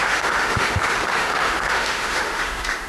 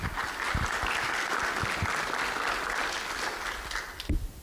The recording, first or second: second